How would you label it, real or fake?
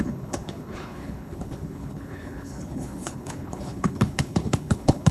fake